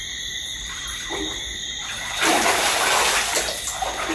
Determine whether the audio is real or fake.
real